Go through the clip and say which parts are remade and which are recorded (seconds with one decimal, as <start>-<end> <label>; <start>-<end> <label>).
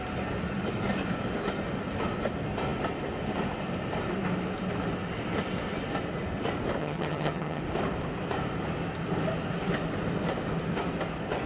0.0-6.8 recorded; 6.8-7.6 remade; 7.6-11.5 recorded